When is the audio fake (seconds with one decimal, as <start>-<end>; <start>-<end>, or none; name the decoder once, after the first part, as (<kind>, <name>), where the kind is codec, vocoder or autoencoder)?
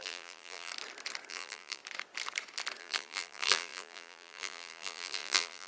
0.0-0.7 (vocoder, BigVGAN v2); 1.3-1.8; 2.8-5.7